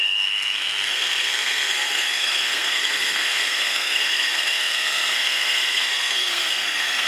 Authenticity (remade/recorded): remade